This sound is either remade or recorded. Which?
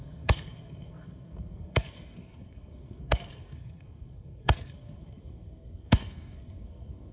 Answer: remade